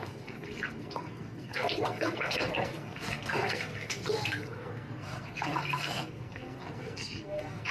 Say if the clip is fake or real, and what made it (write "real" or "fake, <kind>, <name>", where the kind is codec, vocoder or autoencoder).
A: fake, codec, SNAC